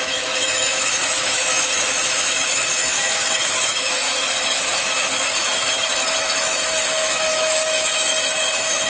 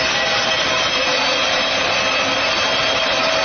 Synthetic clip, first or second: first